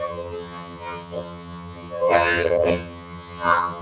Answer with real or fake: fake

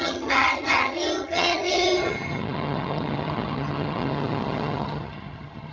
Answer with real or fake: fake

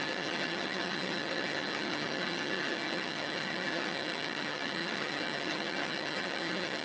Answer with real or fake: fake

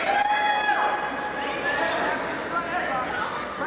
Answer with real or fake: real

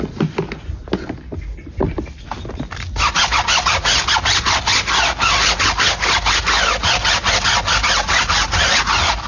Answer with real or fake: real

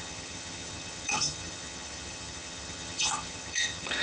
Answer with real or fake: fake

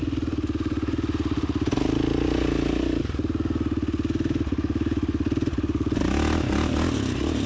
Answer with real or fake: real